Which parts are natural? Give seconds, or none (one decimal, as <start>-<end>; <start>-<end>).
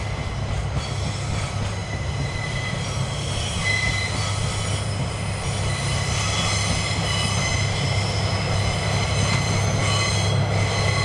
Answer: 0.0-1.8; 3.3-11.0